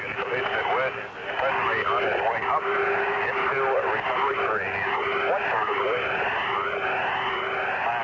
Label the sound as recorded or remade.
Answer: recorded